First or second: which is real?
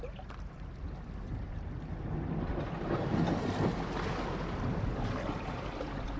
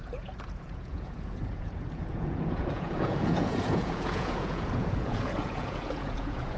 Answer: first